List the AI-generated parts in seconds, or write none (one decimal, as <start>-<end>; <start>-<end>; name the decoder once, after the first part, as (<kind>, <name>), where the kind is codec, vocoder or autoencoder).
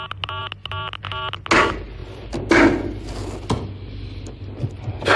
none